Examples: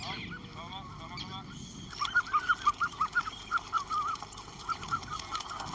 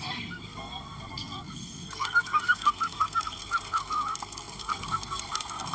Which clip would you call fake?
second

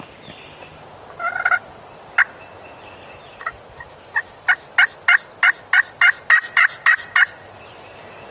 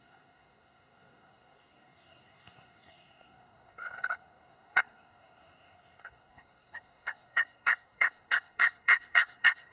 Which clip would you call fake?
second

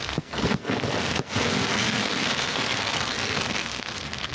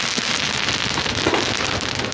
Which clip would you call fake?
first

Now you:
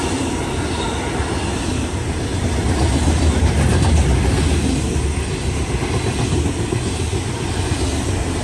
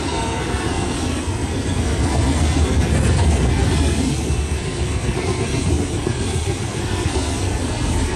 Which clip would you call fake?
second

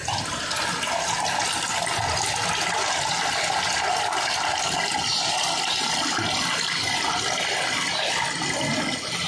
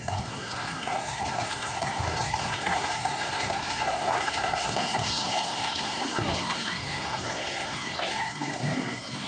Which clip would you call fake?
second